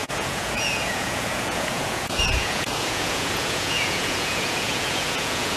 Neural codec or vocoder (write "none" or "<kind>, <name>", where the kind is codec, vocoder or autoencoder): vocoder, Vocos